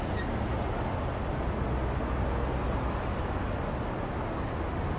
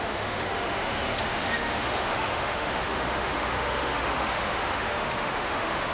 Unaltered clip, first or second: first